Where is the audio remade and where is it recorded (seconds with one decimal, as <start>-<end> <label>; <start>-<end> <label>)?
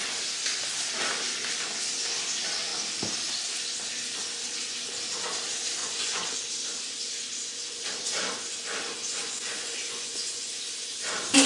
0.0-5.8 recorded; 5.8-6.3 remade; 6.3-9.2 recorded; 9.2-10.5 remade; 10.5-11.5 recorded